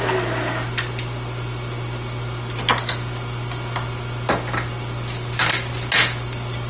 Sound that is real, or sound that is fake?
real